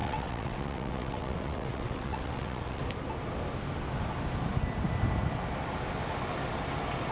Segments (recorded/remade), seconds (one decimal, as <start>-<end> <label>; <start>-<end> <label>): 0.0-2.8 remade; 2.8-7.1 recorded